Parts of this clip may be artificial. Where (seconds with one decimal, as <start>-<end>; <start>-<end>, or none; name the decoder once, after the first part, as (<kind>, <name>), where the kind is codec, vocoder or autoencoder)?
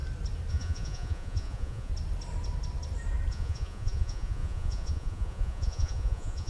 0.5-1.9 (vocoder, Vocos); 3.3-6.5